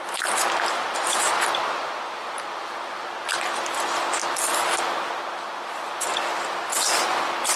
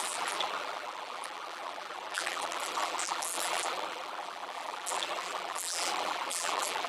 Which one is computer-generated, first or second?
second